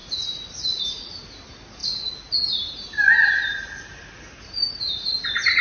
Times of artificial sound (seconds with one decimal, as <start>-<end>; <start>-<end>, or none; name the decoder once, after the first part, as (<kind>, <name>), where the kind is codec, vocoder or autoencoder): none